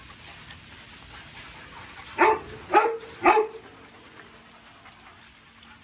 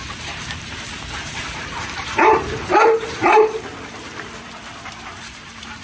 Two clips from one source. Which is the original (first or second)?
first